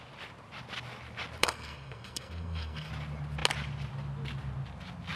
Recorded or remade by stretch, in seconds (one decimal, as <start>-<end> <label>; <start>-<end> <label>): 0.0-1.4 recorded; 1.4-2.9 remade; 2.9-5.2 recorded